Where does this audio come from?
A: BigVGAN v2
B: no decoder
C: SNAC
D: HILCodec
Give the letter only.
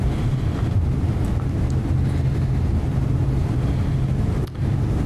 B